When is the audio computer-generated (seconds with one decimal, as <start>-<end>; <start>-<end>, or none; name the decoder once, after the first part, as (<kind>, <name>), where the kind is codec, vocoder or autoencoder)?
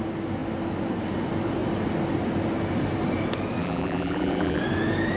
3.6-4.6 (vocoder, BigVGAN v2)